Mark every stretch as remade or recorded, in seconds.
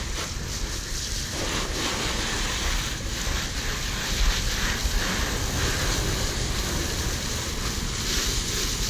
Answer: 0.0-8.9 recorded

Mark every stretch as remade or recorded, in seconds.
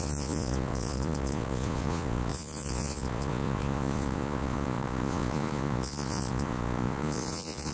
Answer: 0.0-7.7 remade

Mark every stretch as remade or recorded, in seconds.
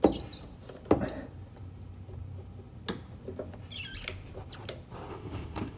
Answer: 0.0-5.1 recorded; 5.1-5.8 remade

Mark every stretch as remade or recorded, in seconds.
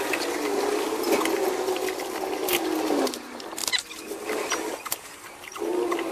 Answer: 0.0-6.1 recorded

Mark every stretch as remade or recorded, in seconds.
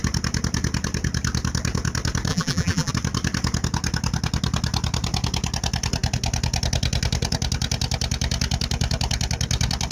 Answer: 0.0-2.3 recorded; 2.3-2.9 remade; 2.9-9.9 recorded